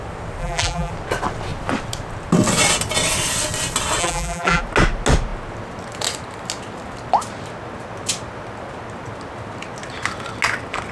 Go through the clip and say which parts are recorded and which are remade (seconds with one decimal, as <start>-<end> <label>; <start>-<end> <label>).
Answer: 0.0-0.4 recorded; 0.4-0.9 remade; 0.9-4.0 recorded; 4.0-4.6 remade; 4.6-10.9 recorded